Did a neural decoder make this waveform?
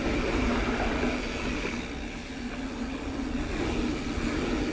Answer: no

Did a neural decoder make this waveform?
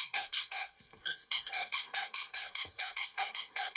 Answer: yes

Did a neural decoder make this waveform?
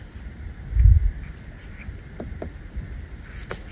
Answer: no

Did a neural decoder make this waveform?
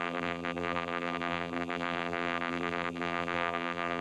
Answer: yes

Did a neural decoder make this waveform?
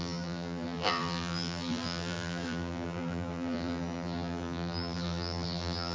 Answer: yes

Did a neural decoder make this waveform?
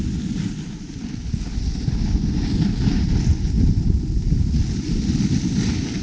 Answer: no